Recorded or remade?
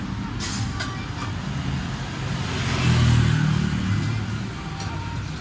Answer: recorded